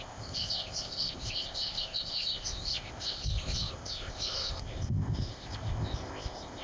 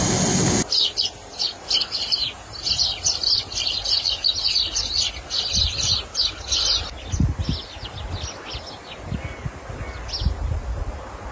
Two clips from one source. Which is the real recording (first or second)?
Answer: second